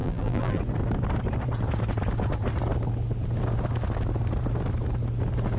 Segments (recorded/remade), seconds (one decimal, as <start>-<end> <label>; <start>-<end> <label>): 0.0-0.6 remade; 0.6-5.6 recorded